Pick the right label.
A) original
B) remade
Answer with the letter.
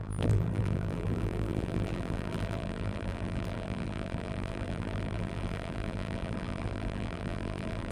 B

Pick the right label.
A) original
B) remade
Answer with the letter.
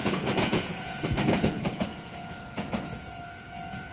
B